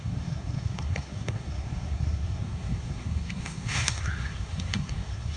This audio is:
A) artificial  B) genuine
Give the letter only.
A